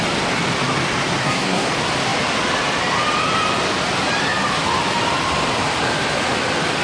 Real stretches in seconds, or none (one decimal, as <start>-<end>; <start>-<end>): 0.0-1.2; 1.7-6.8